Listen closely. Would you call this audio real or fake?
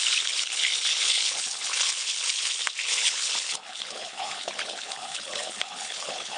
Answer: fake